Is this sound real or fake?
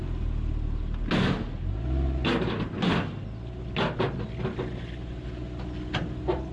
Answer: real